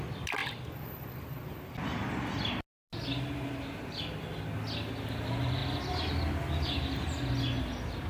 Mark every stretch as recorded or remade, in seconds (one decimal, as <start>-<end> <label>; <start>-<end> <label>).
0.0-8.1 recorded